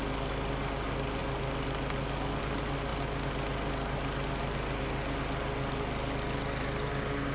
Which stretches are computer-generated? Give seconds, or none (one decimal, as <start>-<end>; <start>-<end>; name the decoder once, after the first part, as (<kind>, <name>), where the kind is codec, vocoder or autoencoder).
none